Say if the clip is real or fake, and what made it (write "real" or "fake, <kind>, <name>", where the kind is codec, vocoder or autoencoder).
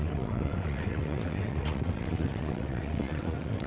fake, vocoder, WaveNeXt